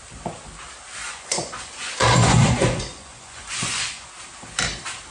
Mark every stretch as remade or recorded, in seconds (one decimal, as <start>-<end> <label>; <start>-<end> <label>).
0.0-1.0 recorded; 1.0-4.1 remade; 4.1-5.1 recorded